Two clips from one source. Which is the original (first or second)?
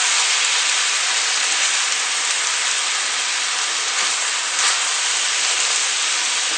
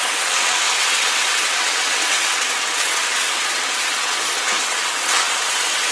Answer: first